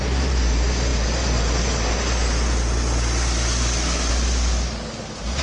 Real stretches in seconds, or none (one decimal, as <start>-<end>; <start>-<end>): 0.0-5.4